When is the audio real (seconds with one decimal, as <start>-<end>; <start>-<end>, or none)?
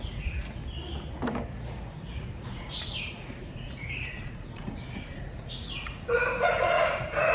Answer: 0.6-1.9